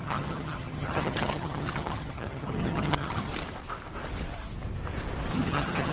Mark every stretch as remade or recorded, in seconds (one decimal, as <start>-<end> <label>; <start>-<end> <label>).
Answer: 0.0-3.3 remade; 3.3-5.3 recorded; 5.3-5.9 remade